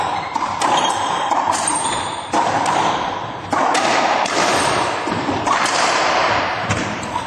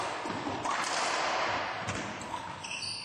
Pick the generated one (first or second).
first